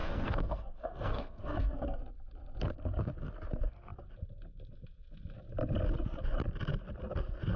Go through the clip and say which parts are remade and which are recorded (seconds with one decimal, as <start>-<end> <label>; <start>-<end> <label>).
0.0-2.0 remade; 2.0-7.6 recorded